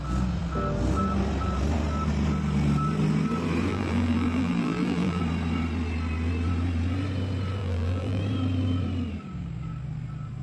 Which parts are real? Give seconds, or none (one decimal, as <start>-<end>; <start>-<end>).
0.0-3.7; 5.2-7.6; 8.2-10.4